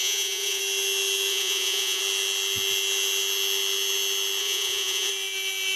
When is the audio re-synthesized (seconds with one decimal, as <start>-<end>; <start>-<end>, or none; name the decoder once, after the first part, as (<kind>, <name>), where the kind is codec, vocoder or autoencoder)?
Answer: 0.0-0.6 (vocoder, Vocos); 1.3-2.0; 4.4-5.1